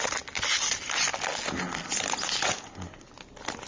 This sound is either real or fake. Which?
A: real